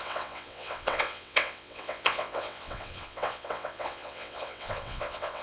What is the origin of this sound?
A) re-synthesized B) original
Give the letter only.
A